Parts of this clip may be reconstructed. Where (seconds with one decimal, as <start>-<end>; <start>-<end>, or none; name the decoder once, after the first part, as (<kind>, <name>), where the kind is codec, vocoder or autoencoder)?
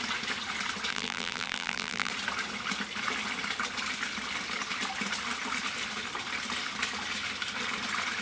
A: 0.9-2.1 (vocoder, BigVGAN v2)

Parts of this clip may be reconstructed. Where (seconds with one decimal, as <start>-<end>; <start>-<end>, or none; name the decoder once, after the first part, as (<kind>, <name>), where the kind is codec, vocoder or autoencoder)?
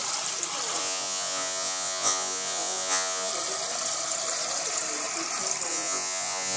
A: 0.8-3.3 (vocoder, Vocos); 5.7-6.6